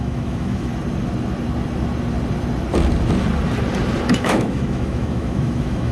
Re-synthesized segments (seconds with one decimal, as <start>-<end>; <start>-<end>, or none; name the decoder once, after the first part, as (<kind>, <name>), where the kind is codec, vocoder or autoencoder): 0.0-0.7 (autoencoder, DAC-VAE); 4.2-5.9